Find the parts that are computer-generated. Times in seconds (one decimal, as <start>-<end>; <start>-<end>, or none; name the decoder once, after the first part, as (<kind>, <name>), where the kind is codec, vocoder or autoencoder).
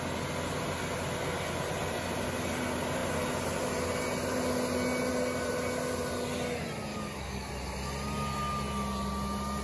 6.9-7.5 (codec, DAC)